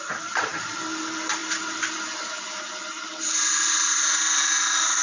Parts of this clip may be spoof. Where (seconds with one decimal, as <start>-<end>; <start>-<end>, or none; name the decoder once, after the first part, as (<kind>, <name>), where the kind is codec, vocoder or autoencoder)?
0.0-0.5 (vocoder, BigVGAN v2); 1.0-5.0